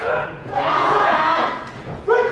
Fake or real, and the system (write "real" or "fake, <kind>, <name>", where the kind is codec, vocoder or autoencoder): fake, vocoder, Vocos